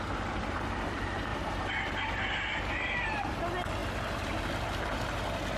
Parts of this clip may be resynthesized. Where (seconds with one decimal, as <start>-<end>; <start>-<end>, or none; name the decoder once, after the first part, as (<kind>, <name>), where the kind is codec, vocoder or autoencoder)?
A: none